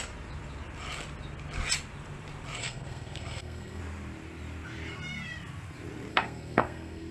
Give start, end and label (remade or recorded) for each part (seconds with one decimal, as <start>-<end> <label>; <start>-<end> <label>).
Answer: 0.0-2.6 recorded; 2.6-3.8 remade; 3.8-6.1 recorded; 6.1-7.1 remade